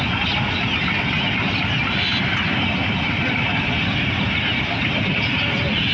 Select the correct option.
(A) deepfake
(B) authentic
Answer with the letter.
B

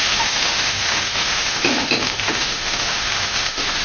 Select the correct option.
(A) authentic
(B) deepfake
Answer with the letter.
B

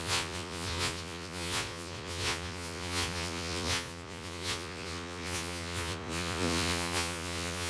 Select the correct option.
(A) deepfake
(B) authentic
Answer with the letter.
A